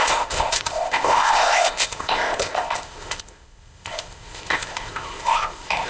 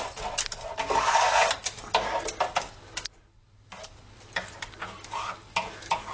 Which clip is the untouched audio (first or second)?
second